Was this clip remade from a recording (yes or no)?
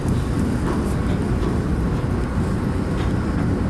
no